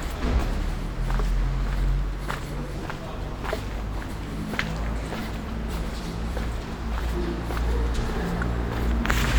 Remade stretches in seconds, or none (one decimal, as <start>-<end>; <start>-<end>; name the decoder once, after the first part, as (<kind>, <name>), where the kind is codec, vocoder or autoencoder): 5.2-7.0 (vocoder, BigVGAN v2)